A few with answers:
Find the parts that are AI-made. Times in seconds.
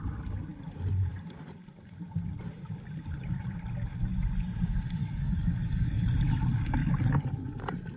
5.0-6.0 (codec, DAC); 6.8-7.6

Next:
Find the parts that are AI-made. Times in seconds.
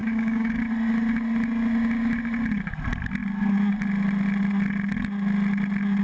0.0-0.6 (codec, DAC)